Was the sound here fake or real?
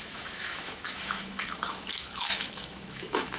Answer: fake